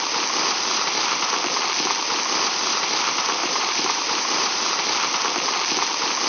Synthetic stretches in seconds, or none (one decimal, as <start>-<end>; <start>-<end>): 3.4-4.7

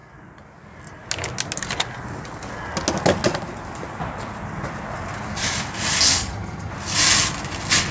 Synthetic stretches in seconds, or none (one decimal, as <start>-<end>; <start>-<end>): 6.2-6.7

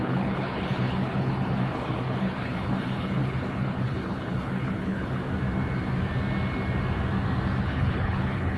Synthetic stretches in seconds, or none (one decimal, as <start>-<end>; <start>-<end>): 0.0-5.2; 7.6-8.6

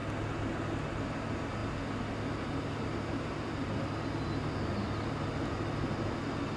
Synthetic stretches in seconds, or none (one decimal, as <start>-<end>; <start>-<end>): none